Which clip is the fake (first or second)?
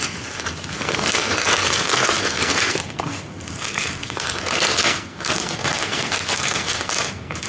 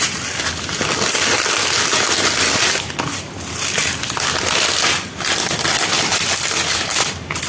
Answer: first